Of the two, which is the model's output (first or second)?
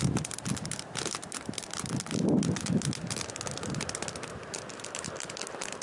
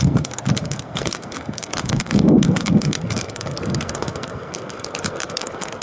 second